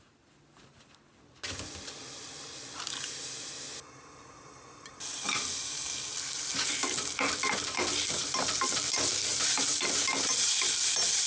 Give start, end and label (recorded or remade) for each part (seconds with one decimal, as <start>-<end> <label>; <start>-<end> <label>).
0.0-11.3 recorded